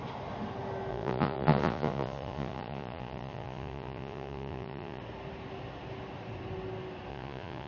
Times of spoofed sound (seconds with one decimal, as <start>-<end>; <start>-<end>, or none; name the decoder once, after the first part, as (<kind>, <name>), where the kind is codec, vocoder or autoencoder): 0.9-5.0 (vocoder, Vocos); 7.1-7.7